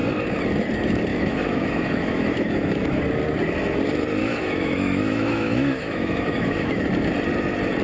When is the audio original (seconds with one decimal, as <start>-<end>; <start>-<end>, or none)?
0.0-1.1; 3.0-4.2; 6.8-7.8